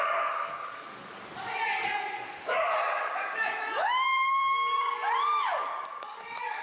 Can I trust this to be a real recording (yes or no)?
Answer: no